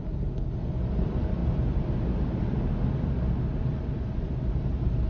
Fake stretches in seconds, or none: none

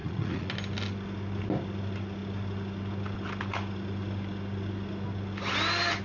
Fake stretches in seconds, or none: 0.0-0.5 (vocoder, Vocos)